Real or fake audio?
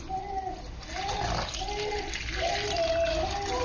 real